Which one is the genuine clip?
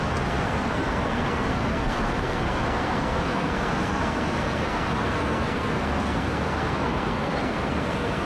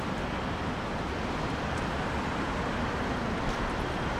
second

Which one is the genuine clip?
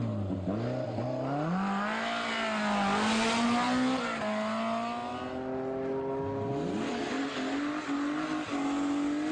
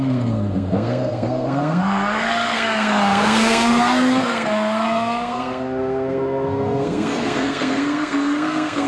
first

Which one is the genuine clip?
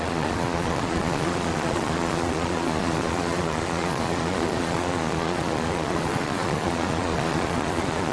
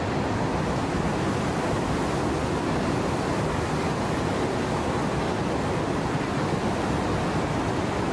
second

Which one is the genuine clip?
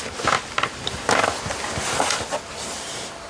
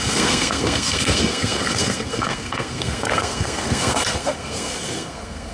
first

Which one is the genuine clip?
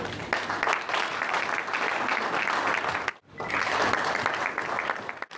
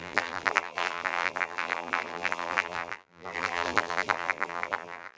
first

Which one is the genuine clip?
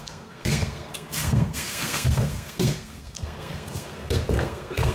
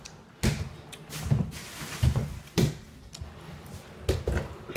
second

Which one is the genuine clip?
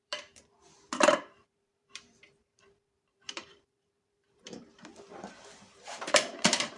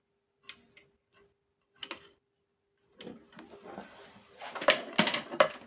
second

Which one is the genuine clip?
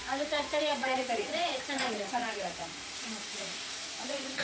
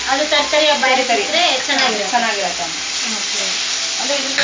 second